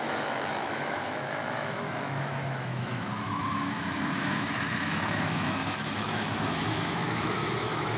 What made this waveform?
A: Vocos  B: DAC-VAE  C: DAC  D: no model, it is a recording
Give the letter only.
B